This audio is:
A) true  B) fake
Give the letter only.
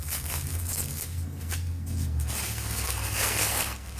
B